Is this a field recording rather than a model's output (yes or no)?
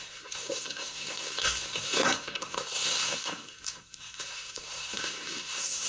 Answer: no